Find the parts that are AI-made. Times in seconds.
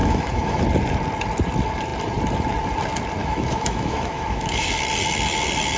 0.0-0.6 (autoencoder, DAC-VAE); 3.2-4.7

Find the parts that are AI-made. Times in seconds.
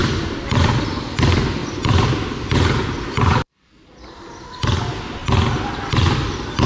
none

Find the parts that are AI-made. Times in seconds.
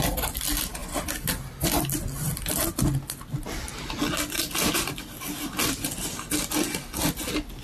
none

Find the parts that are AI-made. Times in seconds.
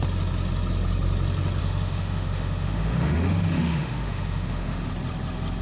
1.6-4.9 (autoencoder, DAC-VAE)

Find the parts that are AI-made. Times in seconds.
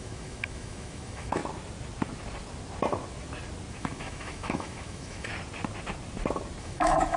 0.0-1.4 (autoencoder, DAC-VAE); 3.7-5.3; 6.6-7.2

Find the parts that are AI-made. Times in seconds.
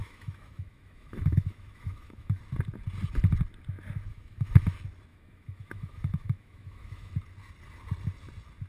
0.0-2.4 (autoencoder, DAC-VAE); 4.1-4.6; 5.1-7.1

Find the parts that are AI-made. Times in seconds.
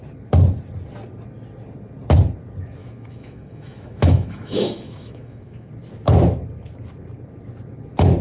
2.8-5.7 (autoencoder, DAC-VAE)